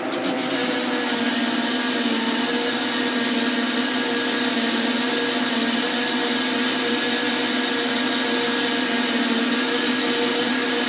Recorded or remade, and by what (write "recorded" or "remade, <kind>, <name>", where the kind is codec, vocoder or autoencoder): recorded